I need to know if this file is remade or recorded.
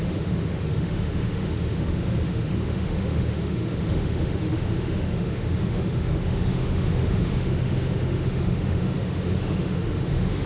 remade